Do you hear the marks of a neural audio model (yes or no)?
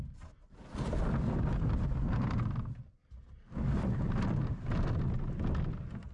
no